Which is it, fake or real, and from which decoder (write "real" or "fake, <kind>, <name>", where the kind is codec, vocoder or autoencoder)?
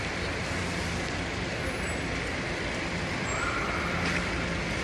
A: real